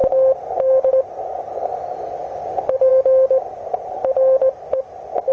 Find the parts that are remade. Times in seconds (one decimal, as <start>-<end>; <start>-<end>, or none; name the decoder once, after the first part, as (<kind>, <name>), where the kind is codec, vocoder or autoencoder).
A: none